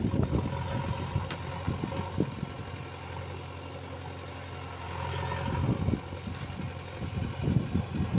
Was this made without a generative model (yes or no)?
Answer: yes